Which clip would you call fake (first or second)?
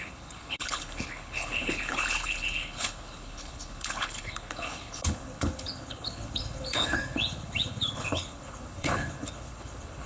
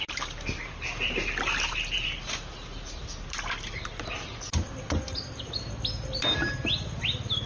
first